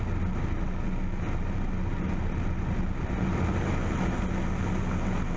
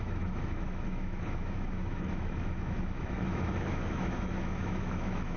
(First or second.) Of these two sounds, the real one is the first